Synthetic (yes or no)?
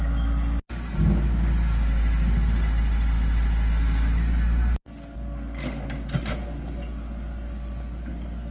no